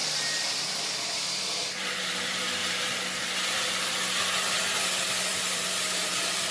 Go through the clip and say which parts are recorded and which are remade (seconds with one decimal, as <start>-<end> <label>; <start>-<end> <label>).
0.0-2.2 remade; 2.2-6.5 recorded